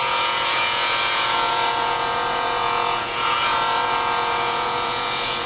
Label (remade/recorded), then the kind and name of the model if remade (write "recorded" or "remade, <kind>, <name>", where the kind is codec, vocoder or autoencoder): remade, vocoder, Vocos